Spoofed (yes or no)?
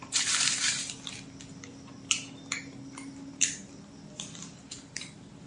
no